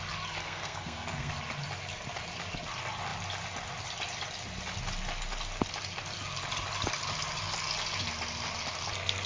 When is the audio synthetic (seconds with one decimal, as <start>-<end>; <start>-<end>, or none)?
0.4-1.3